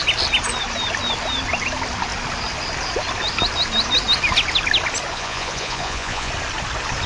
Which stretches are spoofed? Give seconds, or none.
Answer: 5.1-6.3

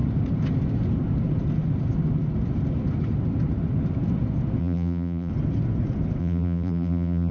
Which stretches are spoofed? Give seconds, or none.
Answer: 4.6-5.3; 6.2-7.3

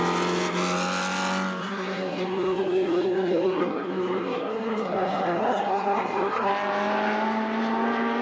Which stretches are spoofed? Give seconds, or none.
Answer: 1.6-6.5

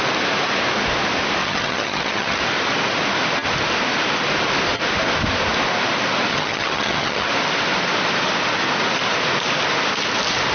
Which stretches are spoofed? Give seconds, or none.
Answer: 1.4-2.4; 6.3-7.3